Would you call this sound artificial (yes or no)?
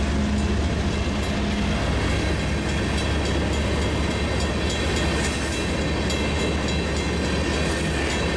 no